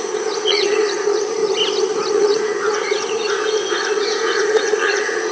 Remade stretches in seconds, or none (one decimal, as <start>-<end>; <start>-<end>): 0.0-1.4; 2.1-5.3

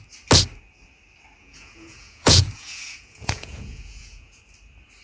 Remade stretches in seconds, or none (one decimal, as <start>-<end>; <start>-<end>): 1.4-4.4

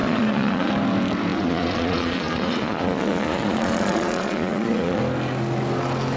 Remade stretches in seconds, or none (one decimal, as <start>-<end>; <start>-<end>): 0.0-0.7; 1.3-5.0

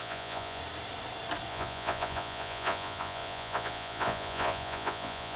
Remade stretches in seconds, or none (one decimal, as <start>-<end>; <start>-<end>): 0.0-0.6; 1.5-5.4

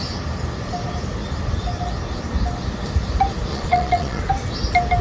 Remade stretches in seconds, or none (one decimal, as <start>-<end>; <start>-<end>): 3.5-4.2

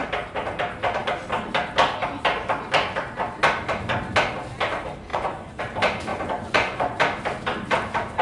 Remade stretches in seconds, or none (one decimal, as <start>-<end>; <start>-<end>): 5.1-5.6; 6.1-7.0

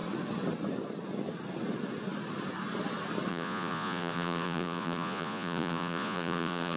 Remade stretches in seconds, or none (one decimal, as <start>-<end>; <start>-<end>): 3.3-6.8

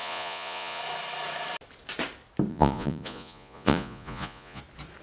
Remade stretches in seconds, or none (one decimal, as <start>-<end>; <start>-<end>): 0.0-0.8; 2.5-4.6